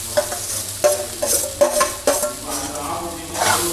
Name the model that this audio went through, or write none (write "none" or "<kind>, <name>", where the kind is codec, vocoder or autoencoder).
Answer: none